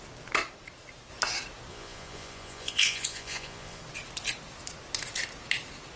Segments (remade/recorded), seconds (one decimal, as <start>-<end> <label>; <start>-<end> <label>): 0.0-1.7 recorded; 1.7-3.8 remade; 3.8-6.0 recorded